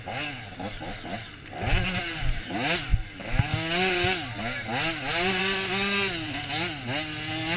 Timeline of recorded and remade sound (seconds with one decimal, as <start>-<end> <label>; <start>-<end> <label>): 0.0-7.6 recorded